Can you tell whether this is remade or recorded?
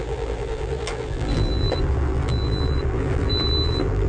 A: remade